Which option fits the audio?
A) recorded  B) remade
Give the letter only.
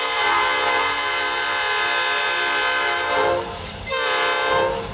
A